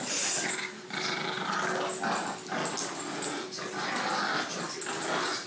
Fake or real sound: real